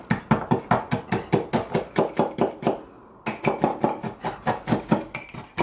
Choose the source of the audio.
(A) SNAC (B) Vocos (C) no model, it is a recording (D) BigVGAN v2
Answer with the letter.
C